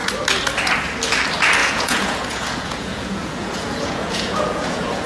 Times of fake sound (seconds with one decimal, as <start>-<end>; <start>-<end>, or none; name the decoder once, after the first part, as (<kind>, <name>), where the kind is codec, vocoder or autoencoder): 1.6-5.1 (vocoder, Vocos)